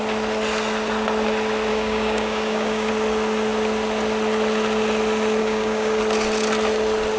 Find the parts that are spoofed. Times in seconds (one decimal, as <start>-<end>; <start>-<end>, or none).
1.7-2.9; 5.4-6.0